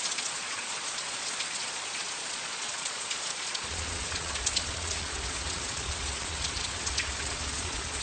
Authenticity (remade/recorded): remade